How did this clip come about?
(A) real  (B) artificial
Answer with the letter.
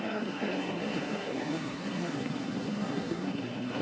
B